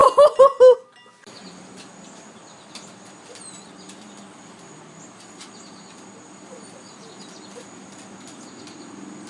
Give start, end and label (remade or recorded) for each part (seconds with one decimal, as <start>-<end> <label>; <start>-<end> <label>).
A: 0.0-9.3 recorded